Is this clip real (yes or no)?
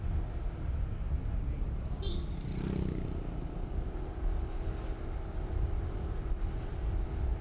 yes